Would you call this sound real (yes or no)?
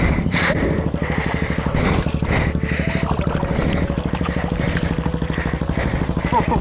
yes